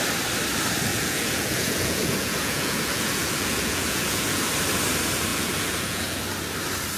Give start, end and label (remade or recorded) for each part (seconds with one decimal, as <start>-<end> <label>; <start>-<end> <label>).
0.0-0.9 recorded; 0.9-4.4 remade; 4.4-5.3 recorded; 5.3-6.2 remade; 6.2-7.0 recorded